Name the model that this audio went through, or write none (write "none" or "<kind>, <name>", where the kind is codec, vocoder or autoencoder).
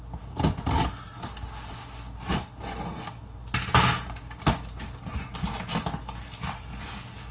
none